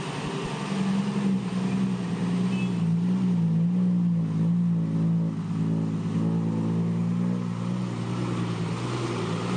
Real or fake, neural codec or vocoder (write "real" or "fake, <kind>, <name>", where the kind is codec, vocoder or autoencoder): real